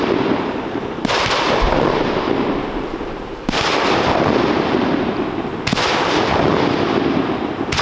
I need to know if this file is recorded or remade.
remade